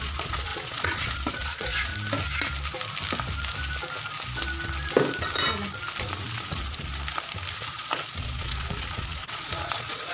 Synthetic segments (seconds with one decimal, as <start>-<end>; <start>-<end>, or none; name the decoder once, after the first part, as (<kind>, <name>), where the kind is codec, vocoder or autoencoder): 0.0-1.9 (vocoder, Vocos); 6.0-6.9; 7.5-10.1